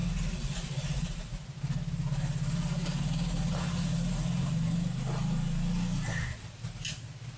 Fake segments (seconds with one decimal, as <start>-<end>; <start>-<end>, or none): none

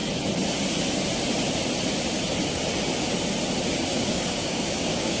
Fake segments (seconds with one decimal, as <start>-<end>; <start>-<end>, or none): 3.9-5.2

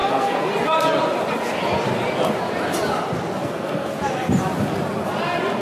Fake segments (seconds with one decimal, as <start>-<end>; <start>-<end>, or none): 0.0-0.5; 3.4-3.9

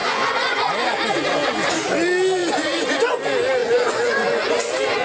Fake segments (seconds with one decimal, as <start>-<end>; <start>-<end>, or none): 0.0-0.7; 2.4-3.1; 3.6-4.5

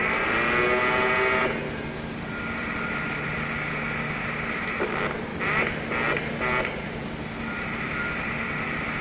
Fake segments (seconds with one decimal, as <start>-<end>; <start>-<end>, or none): none